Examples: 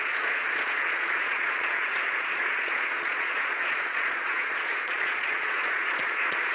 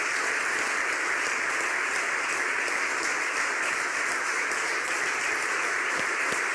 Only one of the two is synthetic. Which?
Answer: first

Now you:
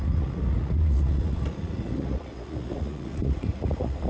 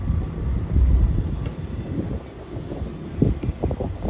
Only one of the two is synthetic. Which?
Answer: first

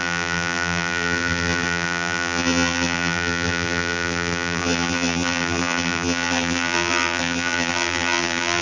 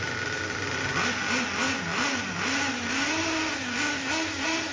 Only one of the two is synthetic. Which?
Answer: first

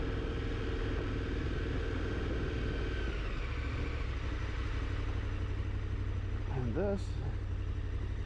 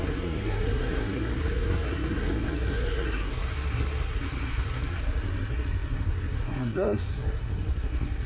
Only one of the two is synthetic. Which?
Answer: second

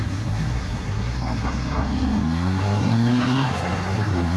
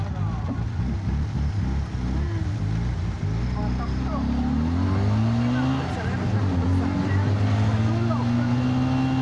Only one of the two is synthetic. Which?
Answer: first